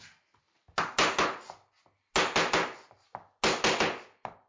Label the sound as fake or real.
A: real